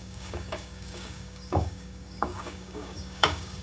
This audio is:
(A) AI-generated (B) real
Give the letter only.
A